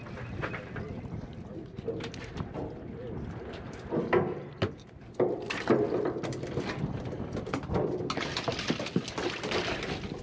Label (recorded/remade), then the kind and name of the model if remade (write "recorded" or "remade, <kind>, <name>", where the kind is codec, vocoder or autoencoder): recorded